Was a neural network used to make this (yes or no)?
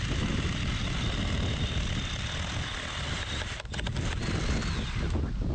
no